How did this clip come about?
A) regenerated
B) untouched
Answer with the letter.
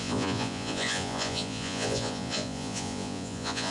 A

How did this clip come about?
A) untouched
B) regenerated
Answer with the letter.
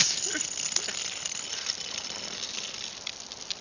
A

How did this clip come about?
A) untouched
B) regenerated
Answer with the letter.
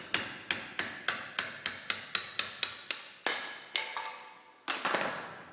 A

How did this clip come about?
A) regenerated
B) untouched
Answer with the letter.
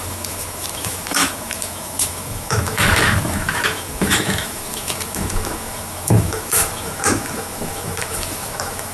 A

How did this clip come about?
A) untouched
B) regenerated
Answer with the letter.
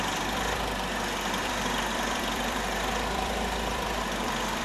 B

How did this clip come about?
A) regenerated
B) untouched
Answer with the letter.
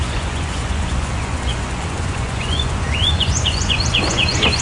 A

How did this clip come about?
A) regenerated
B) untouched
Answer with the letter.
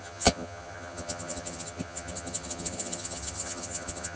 A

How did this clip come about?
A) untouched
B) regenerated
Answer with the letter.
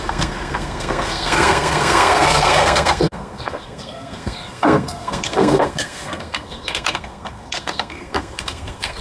B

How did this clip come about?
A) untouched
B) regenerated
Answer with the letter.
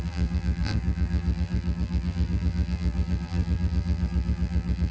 B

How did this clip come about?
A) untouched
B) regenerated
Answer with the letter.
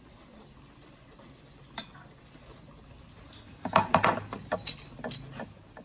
A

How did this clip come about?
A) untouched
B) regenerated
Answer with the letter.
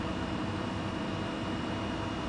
B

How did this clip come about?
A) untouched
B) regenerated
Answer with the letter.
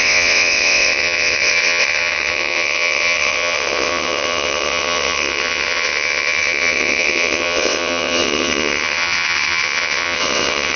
B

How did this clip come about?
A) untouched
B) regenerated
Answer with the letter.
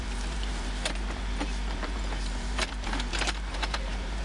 B